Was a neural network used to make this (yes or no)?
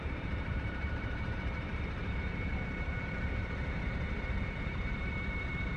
yes